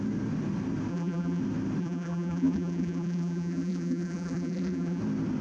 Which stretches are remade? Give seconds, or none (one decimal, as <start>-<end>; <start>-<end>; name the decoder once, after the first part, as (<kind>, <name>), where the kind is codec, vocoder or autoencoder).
0.9-1.4 (vocoder, BigVGAN v2); 1.8-5.0